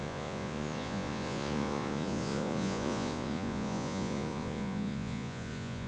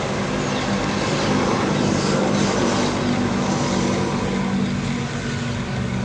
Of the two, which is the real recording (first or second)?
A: second